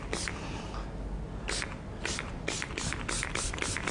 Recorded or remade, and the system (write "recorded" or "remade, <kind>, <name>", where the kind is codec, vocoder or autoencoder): recorded